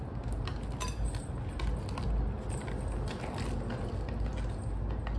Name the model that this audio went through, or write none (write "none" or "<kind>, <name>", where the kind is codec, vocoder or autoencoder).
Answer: none